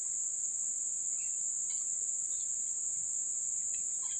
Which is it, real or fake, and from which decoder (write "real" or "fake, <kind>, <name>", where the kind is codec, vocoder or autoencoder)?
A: real